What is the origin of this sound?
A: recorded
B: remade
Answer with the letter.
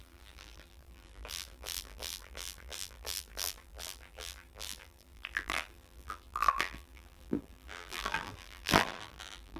B